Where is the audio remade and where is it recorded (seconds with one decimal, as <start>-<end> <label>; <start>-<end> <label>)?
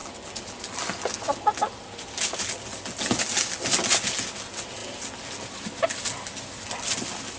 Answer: 0.0-7.4 recorded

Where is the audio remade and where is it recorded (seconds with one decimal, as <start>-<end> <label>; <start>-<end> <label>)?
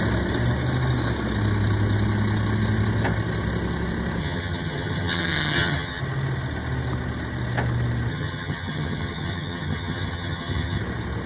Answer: 0.0-4.2 recorded; 4.2-6.0 remade; 6.0-8.1 recorded; 8.1-10.8 remade; 10.8-11.3 recorded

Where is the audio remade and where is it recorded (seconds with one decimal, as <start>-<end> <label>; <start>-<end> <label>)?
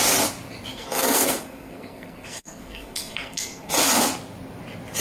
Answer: 0.0-0.7 recorded; 0.7-3.7 remade; 3.7-5.0 recorded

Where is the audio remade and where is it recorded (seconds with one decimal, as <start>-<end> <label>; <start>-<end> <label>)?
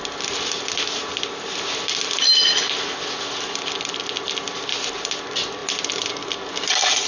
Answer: 0.0-7.1 recorded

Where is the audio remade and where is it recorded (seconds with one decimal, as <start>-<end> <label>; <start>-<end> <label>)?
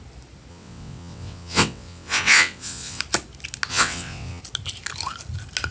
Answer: 0.0-0.5 recorded; 0.5-3.0 remade; 3.0-3.7 recorded; 3.7-4.4 remade; 4.4-5.7 recorded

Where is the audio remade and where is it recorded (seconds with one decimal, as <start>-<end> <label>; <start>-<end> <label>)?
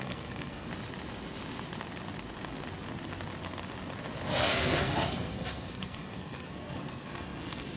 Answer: 0.0-0.7 remade; 0.7-4.3 recorded; 4.3-7.8 remade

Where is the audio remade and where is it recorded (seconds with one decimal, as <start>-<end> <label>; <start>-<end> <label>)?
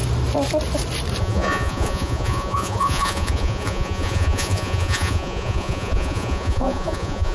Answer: 0.0-1.2 recorded; 1.2-7.3 remade